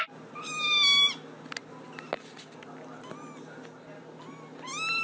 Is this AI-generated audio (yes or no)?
no